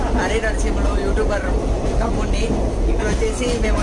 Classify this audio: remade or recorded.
recorded